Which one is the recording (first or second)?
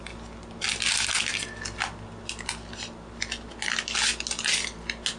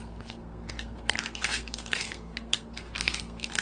first